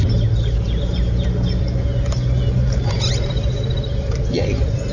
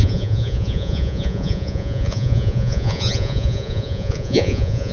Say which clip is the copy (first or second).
second